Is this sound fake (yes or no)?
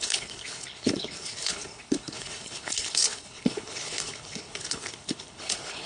yes